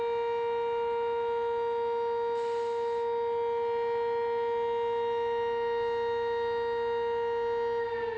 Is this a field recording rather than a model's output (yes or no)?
yes